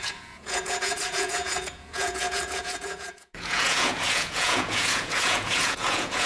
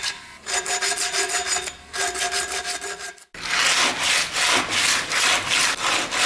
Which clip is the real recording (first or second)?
second